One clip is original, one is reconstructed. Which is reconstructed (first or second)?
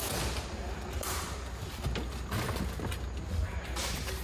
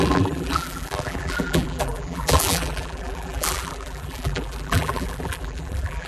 second